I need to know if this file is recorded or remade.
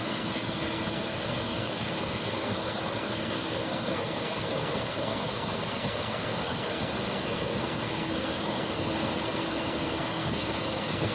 remade